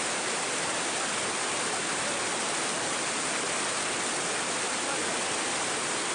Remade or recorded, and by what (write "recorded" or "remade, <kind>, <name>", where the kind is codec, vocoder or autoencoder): recorded